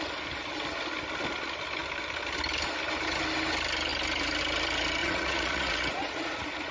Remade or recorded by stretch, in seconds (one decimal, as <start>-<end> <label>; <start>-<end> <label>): 0.0-5.0 recorded; 5.0-6.7 remade